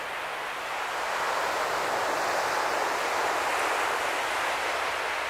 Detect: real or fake real